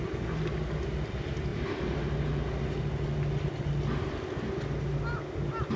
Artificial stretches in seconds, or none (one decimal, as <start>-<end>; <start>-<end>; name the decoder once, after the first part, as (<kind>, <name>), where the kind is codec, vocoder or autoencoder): none